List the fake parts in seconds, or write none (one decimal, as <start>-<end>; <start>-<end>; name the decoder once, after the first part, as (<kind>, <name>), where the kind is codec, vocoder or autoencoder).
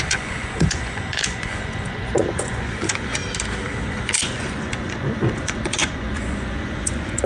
0.0-3.2 (vocoder, Vocos); 3.8-7.3